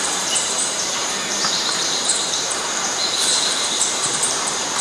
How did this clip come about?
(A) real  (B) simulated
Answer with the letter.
B